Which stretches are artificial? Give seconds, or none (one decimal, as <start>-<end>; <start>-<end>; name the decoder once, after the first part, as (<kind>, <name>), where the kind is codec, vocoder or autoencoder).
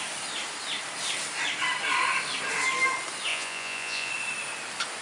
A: 3.3-4.1 (vocoder, Vocos)